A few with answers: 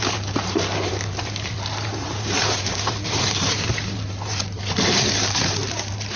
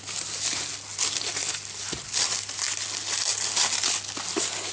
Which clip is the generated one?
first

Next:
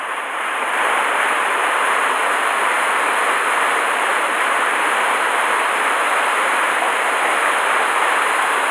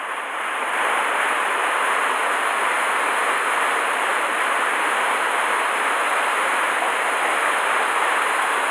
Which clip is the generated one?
first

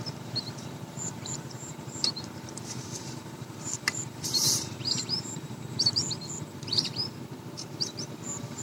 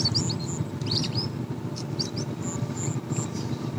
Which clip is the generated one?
first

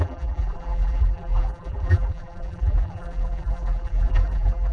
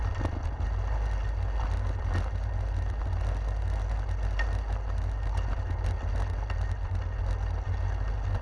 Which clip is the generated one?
first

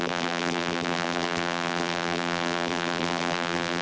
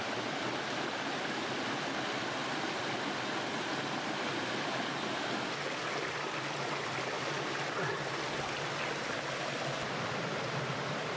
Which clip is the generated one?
first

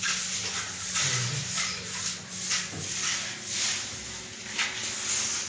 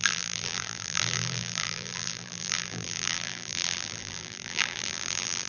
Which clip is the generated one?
second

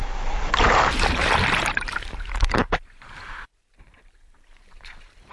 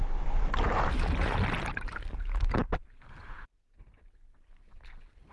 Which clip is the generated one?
first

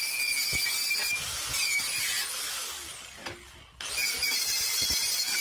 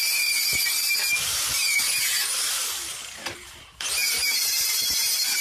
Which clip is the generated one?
second